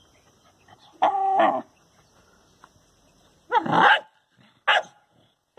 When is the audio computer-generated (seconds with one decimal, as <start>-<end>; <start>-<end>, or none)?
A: 4.7-5.6